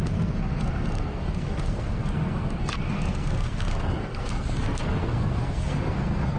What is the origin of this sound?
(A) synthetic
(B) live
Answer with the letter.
A